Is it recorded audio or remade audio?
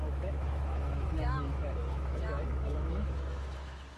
remade